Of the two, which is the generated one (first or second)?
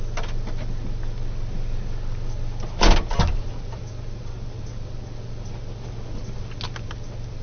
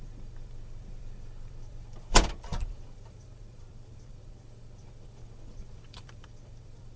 second